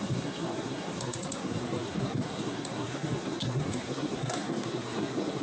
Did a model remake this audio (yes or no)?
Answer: yes